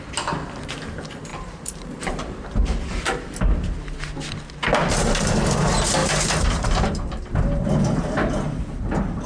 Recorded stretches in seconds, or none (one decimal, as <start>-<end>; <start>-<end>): 0.0-1.3; 3.5-6.0; 8.6-9.3